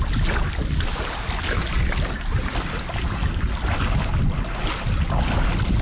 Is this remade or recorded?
recorded